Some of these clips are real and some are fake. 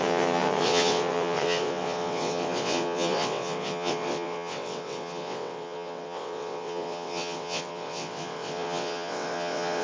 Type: fake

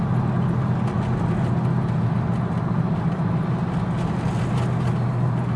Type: real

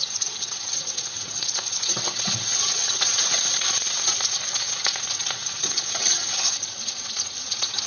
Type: fake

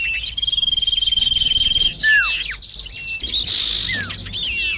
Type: real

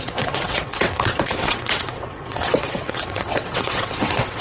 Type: fake